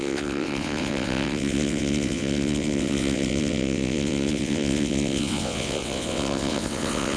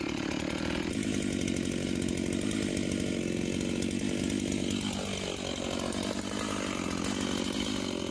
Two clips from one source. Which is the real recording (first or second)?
second